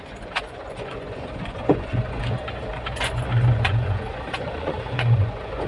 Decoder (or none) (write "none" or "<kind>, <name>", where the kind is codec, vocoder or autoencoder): vocoder, Vocos